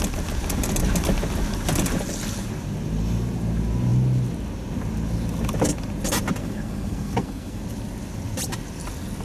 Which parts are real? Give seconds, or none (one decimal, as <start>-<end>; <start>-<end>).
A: 0.0-6.4; 7.6-9.2